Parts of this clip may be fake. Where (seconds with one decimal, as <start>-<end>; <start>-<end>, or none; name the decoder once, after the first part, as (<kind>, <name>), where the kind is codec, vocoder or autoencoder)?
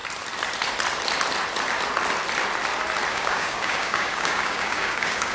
3.1-5.3 (codec, DAC)